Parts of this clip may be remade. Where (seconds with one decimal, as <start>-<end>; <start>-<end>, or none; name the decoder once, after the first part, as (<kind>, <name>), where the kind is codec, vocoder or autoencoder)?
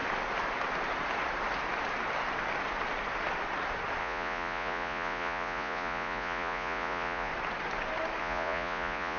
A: 4.0-7.3 (vocoder, Vocos); 8.2-9.2